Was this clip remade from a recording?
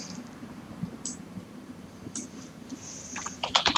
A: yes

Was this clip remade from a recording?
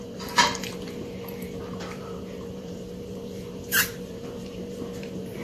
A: yes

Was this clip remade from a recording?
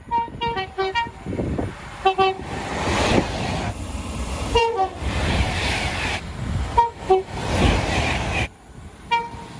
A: yes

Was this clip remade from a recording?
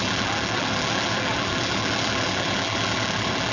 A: yes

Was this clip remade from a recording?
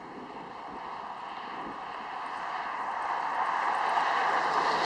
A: no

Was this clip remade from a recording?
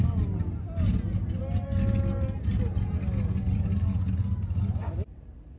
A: no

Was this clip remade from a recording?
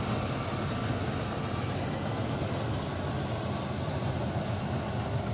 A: no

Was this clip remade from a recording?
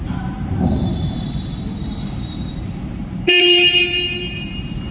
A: yes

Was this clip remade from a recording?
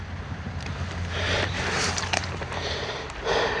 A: yes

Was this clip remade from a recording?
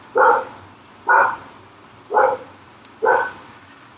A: yes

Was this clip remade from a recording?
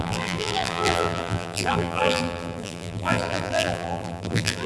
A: yes